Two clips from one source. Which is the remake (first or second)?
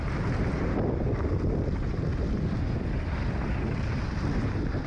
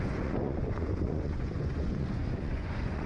second